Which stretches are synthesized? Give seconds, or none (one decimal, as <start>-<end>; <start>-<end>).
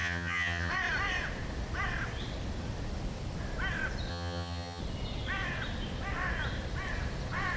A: 0.0-0.7; 4.1-4.8